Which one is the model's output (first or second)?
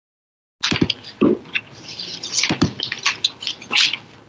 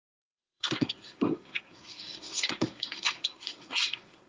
second